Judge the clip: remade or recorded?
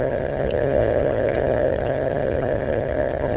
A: remade